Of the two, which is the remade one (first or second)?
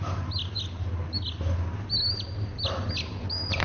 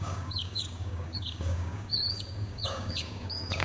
second